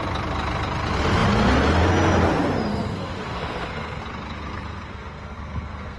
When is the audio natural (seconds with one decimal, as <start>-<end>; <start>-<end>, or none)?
0.0-2.7; 4.0-4.5